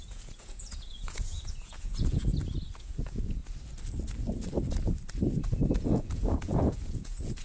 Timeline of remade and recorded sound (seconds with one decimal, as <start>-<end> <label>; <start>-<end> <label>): 0.0-2.3 remade; 2.3-2.8 recorded; 2.8-3.4 remade; 3.4-5.7 recorded; 5.7-7.4 remade